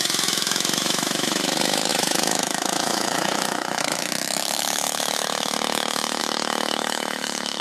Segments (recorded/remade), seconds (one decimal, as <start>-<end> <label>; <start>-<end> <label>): 0.0-7.6 remade